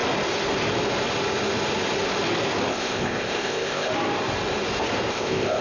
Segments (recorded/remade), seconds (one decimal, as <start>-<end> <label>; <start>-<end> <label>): 0.0-2.7 recorded; 2.7-3.9 remade; 3.9-5.1 recorded; 5.1-5.6 remade